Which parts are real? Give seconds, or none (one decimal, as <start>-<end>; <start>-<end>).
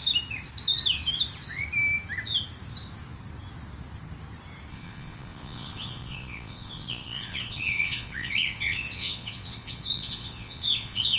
0.0-4.7